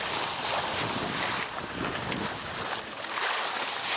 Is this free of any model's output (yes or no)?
yes